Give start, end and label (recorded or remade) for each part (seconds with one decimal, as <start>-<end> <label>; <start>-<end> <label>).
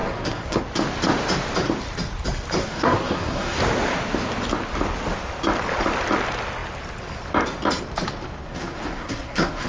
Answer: 0.0-0.6 remade; 0.6-2.6 recorded; 2.6-3.6 remade; 3.6-8.4 recorded; 8.4-9.7 remade